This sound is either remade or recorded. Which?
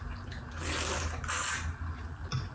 recorded